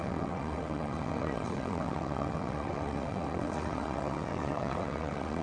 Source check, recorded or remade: remade